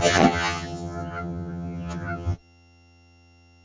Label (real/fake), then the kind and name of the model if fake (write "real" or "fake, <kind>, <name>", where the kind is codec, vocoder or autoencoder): fake, vocoder, HiFi-GAN